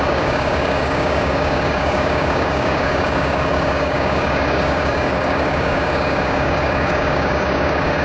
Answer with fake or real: fake